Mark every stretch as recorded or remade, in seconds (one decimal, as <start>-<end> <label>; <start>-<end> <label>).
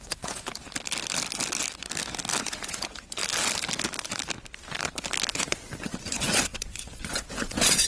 0.0-0.5 remade; 0.5-2.4 recorded; 2.4-3.2 remade; 3.2-5.3 recorded; 5.3-7.9 remade